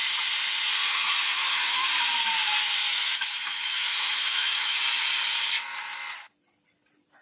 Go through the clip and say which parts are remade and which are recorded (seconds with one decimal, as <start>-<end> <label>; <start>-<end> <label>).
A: 0.0-0.9 recorded; 0.9-1.9 remade; 1.9-2.9 recorded; 2.9-4.8 remade; 4.8-7.2 recorded

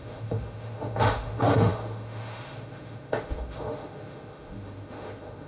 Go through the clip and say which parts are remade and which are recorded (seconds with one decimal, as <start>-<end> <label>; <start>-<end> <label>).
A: 0.0-5.5 remade

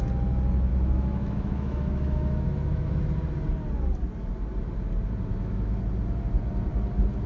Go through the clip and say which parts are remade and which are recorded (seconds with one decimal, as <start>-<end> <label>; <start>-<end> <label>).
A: 0.0-0.7 recorded; 0.7-2.9 remade; 2.9-5.3 recorded; 5.3-5.8 remade; 5.8-7.3 recorded

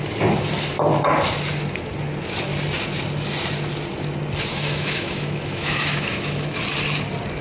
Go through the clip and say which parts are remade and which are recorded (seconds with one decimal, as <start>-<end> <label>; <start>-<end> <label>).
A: 0.0-4.5 recorded; 4.5-6.6 remade; 6.6-7.4 recorded

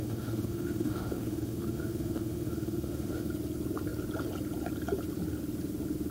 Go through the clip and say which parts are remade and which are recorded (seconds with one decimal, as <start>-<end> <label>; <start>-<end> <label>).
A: 0.0-3.3 remade; 3.3-6.1 recorded

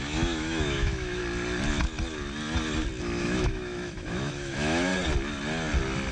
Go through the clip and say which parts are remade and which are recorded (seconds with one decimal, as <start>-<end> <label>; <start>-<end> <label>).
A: 0.0-1.2 remade; 1.2-3.2 recorded; 3.2-4.9 remade; 4.9-6.1 recorded

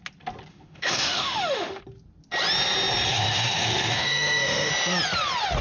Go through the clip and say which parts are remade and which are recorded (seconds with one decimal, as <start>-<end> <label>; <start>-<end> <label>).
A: 0.0-0.5 recorded; 0.5-1.8 remade; 1.8-3.1 recorded; 3.1-4.7 remade; 4.7-5.6 recorded